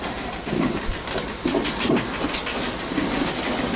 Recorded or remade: recorded